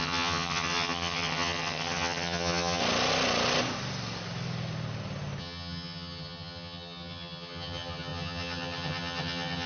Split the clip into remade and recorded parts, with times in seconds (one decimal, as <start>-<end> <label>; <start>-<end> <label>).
0.0-2.8 remade; 2.8-5.4 recorded; 5.4-9.7 remade